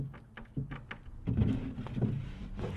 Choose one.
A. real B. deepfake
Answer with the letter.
A